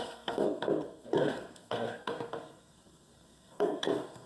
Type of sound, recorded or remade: remade